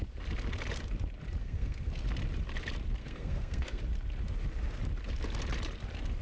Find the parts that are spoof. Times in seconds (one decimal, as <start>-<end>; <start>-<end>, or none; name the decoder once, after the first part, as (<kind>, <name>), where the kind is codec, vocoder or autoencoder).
1.4-1.9 (codec, SNAC); 3.0-3.8

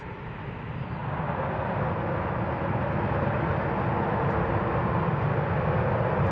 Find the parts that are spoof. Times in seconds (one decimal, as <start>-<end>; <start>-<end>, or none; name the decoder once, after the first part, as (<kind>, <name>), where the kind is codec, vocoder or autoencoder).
none